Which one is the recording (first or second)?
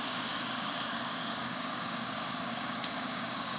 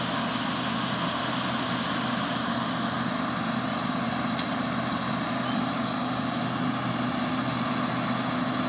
second